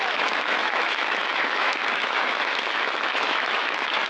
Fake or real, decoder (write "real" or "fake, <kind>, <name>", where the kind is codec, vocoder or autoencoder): fake, autoencoder, DAC-VAE